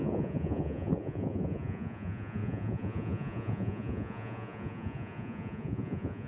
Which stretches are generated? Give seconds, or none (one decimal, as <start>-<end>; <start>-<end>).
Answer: 0.0-6.3